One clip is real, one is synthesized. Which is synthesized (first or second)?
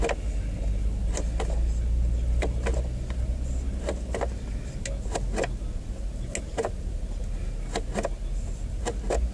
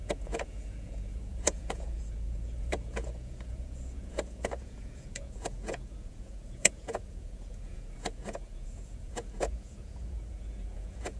second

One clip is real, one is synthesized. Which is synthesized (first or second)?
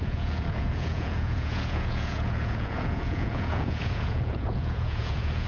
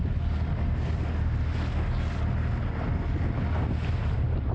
first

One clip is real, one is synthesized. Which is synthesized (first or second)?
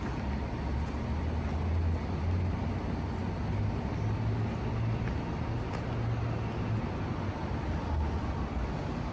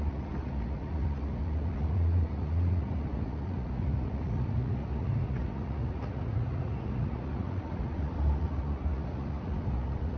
second